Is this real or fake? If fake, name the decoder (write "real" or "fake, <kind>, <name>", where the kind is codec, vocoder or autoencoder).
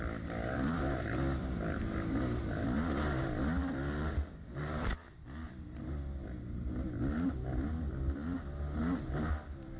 real